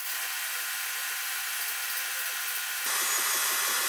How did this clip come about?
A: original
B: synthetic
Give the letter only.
A